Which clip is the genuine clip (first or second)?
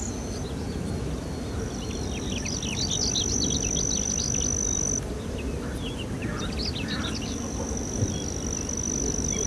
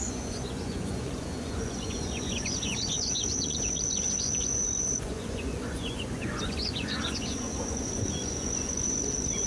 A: first